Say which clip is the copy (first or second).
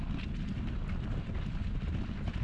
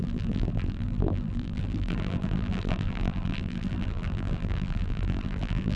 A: second